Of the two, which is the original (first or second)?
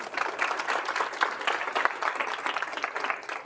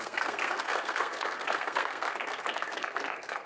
first